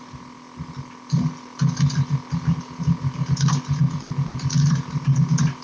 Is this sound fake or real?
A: real